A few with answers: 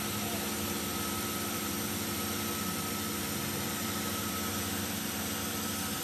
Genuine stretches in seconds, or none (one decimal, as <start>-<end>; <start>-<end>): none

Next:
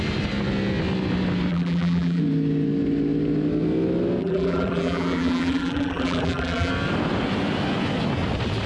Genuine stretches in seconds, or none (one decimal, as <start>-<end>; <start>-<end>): 0.0-1.5; 2.2-4.2; 6.7-8.7

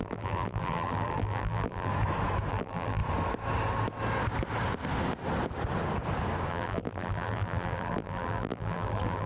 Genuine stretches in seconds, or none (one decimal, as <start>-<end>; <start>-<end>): 1.9-2.5; 3.0-6.5